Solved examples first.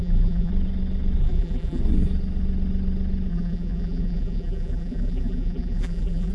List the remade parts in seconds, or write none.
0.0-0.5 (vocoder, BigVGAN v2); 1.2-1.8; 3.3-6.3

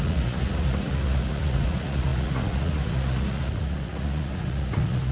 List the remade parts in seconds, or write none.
0.0-5.1 (vocoder, Vocos)

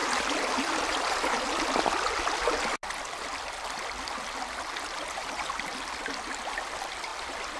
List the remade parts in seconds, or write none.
0.0-1.8 (vocoder, BigVGAN v2); 7.1-7.6

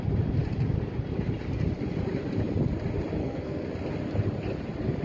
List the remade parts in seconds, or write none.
3.2-3.7 (codec, SNAC)

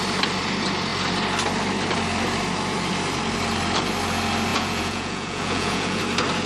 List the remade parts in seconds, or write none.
4.5-6.0 (vocoder, Vocos)

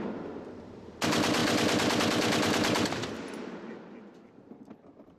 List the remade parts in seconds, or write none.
none